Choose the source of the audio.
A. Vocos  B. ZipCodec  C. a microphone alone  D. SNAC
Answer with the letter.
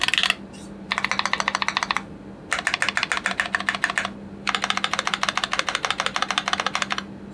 C